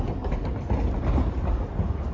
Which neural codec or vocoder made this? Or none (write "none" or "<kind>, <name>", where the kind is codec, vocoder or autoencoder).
none